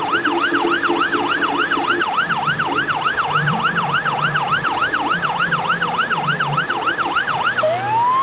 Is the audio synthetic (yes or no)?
no